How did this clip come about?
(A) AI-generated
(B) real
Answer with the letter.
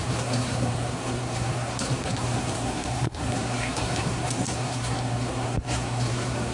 A